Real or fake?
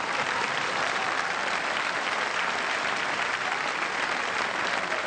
fake